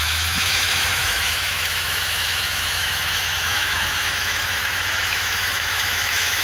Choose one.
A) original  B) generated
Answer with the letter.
B